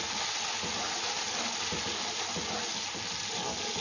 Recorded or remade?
recorded